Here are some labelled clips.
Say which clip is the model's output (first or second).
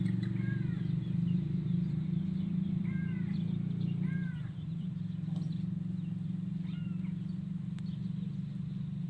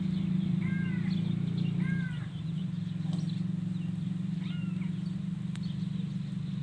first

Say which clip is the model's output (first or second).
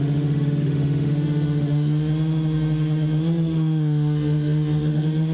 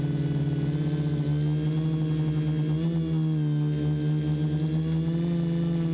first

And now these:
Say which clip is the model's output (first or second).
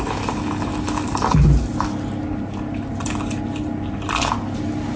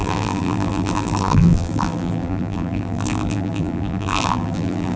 second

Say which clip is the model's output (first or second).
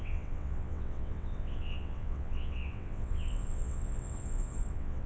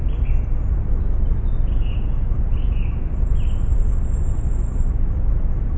first